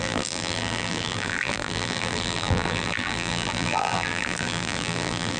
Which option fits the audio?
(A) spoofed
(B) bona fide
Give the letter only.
A